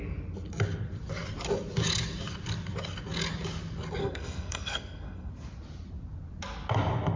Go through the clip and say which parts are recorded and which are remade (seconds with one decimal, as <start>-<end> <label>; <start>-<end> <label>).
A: 0.0-4.0 recorded; 4.0-5.3 remade; 5.3-7.2 recorded